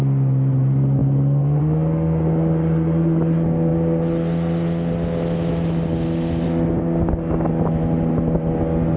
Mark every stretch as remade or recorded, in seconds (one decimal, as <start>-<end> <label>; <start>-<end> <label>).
0.0-9.0 recorded